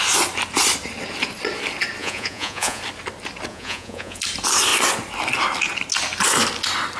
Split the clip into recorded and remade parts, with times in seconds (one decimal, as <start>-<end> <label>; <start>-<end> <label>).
0.0-2.0 recorded; 2.0-2.8 remade; 2.8-3.5 recorded; 3.5-4.2 remade; 4.2-7.0 recorded